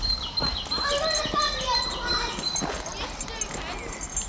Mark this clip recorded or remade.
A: recorded